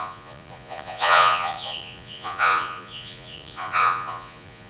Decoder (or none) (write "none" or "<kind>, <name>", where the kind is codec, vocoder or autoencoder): vocoder, Vocos